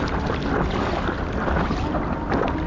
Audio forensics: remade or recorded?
recorded